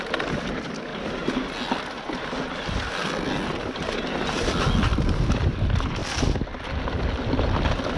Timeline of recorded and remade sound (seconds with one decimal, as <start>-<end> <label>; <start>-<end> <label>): 0.0-8.0 recorded